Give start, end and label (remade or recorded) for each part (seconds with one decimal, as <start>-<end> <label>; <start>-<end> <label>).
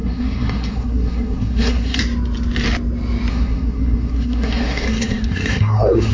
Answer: 0.0-2.0 remade; 2.0-3.3 recorded; 3.3-6.1 remade